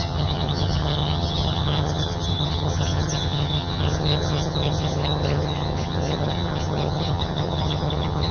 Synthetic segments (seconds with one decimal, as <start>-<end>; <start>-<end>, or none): 0.0-8.3